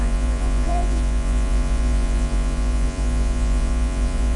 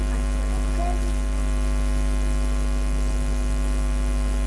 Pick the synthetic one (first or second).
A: first